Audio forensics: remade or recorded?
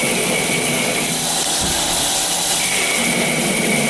recorded